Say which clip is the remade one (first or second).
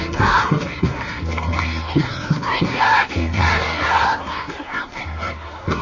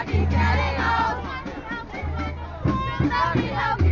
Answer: first